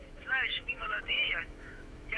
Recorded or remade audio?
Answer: remade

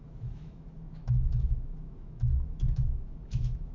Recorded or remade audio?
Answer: remade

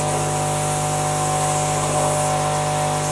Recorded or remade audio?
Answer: recorded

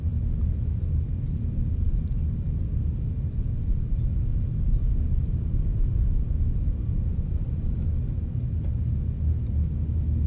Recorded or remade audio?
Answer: recorded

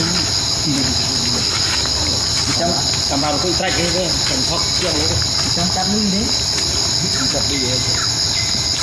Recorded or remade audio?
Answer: recorded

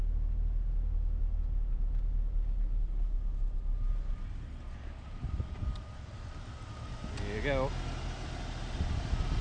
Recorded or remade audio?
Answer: recorded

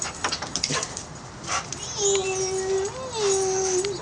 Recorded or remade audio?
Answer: recorded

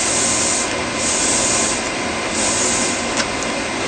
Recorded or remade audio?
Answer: recorded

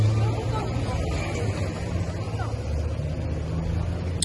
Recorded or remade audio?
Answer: recorded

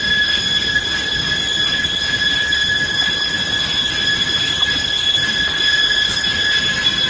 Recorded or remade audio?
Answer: recorded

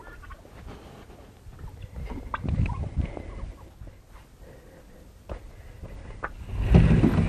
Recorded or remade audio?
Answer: recorded